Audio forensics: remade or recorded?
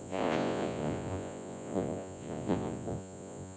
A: remade